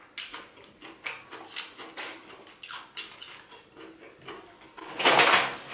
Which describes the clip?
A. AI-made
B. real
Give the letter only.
B